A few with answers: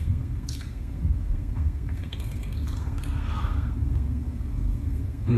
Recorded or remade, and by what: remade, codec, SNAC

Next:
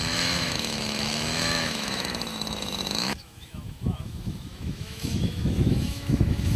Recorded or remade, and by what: remade, autoencoder, DAC-VAE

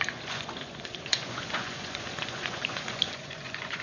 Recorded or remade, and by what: remade, vocoder, Vocos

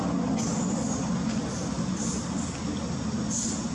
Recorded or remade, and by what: recorded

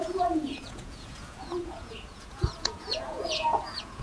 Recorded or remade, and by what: remade, vocoder, Vocos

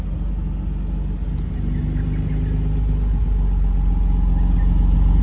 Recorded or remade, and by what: recorded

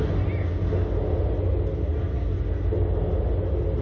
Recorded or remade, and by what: recorded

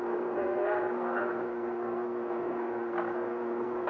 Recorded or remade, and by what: remade, codec, SNAC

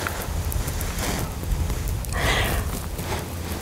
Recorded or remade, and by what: recorded